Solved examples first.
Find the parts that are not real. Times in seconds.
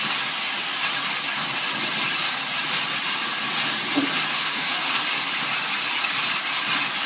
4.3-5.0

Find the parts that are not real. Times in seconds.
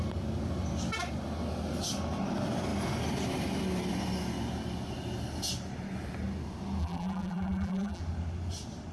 6.8-8.0